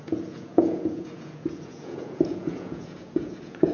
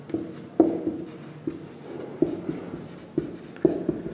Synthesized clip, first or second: first